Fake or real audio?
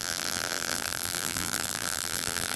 fake